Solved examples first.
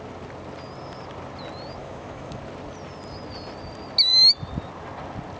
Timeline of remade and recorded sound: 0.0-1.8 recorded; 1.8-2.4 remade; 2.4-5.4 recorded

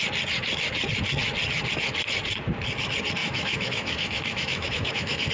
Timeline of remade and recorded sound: 0.0-3.2 recorded; 3.2-5.3 remade